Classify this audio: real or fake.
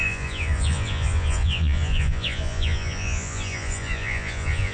fake